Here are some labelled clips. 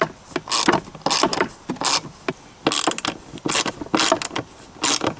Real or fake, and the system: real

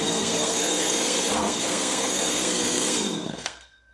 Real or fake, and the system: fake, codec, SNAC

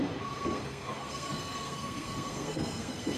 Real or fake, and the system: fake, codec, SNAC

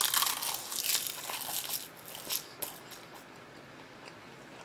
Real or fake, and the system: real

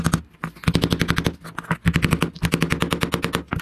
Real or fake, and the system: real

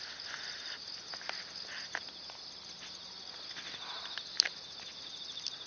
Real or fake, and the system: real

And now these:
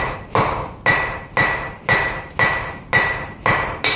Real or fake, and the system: real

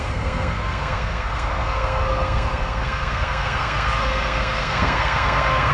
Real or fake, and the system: fake, codec, SNAC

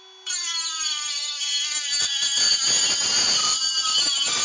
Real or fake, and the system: real